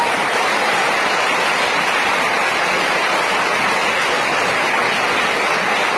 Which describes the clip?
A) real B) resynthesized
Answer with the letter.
A